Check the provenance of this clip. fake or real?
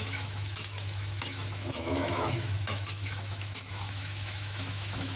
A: fake